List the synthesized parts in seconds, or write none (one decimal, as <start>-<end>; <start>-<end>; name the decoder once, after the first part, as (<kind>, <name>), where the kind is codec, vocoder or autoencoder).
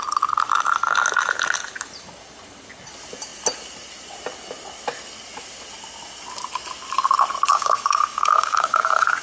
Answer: 7.5-9.2 (codec, DAC)